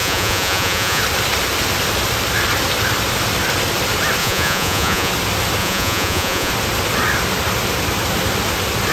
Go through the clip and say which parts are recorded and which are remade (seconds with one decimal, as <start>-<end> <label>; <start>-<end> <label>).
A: 0.0-1.0 remade; 1.0-4.2 recorded; 4.2-5.1 remade; 5.1-5.6 recorded; 5.6-6.5 remade; 6.5-8.9 recorded